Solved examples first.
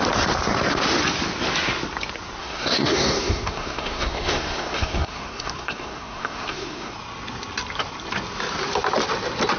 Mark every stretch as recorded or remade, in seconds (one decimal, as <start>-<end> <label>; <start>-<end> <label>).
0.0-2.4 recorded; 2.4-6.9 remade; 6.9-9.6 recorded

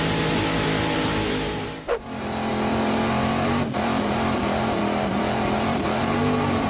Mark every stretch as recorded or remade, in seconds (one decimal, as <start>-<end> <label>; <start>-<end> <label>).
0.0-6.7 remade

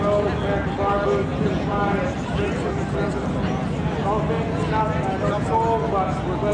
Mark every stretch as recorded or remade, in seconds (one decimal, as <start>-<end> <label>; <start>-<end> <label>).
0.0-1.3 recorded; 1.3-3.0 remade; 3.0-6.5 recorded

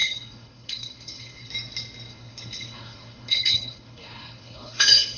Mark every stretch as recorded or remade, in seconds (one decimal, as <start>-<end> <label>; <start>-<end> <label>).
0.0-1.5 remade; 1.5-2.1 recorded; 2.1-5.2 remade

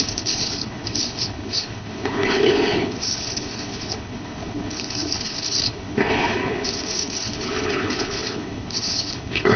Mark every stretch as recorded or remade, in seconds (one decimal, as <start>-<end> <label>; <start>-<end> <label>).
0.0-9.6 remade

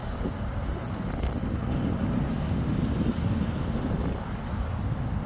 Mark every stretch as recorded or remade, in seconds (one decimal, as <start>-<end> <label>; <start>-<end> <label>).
0.0-5.3 recorded